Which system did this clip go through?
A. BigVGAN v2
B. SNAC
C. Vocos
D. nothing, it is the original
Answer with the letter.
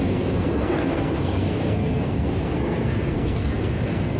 B